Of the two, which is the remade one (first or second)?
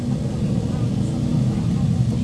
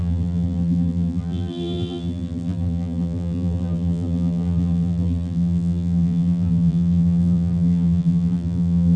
second